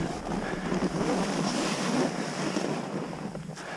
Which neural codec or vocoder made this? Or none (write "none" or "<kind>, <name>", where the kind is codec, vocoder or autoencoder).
vocoder, BigVGAN v2